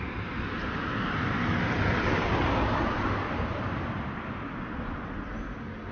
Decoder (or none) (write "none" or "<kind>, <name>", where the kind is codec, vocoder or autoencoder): none